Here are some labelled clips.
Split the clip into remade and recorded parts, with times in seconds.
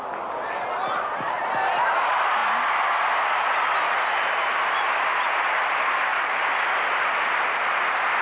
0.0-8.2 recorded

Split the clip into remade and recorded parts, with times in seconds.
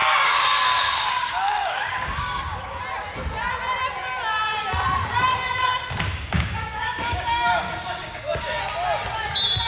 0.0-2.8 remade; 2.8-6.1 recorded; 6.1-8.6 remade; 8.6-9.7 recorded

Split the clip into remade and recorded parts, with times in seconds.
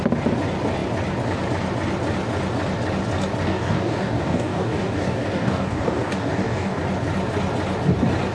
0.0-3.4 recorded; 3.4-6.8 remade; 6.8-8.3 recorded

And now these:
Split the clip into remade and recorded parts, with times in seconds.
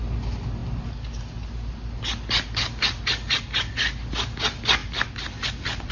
0.0-5.9 recorded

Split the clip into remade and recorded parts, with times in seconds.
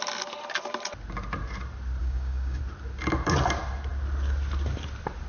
0.0-2.0 recorded; 2.0-2.6 remade; 2.6-5.3 recorded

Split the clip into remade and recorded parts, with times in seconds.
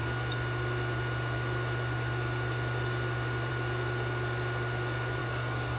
0.0-5.2 recorded; 5.2-5.8 remade